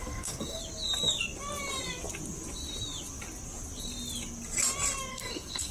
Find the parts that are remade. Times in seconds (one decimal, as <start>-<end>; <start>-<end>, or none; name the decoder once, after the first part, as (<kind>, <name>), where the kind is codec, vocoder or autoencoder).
0.0-0.6 (codec, SNAC); 5.1-5.7